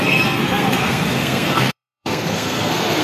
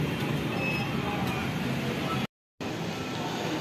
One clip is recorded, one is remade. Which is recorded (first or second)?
second